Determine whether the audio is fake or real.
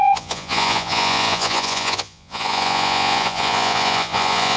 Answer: fake